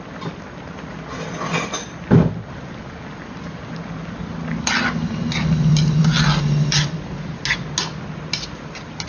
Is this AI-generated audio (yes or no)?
no